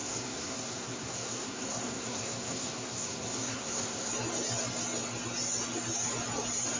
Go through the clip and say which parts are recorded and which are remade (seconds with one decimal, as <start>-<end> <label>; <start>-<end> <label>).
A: 0.0-4.1 remade; 4.1-6.8 recorded